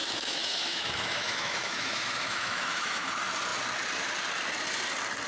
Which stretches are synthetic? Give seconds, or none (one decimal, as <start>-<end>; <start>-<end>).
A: 0.0-3.1